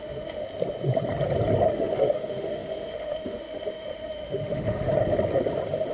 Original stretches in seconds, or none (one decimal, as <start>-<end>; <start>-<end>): 0.4-1.7; 4.9-5.9